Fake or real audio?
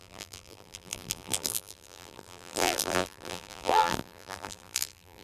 fake